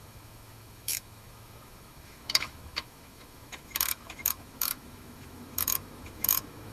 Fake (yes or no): yes